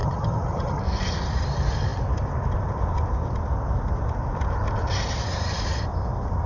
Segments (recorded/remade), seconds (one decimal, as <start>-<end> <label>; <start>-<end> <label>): 0.0-0.8 remade; 0.8-6.5 recorded